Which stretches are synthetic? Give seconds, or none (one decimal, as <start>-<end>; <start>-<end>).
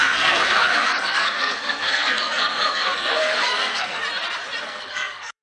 0.0-4.0; 4.6-5.4